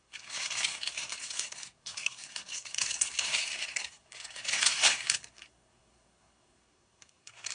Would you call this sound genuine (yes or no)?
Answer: no